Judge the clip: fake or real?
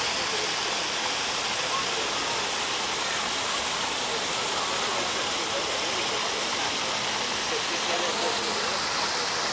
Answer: real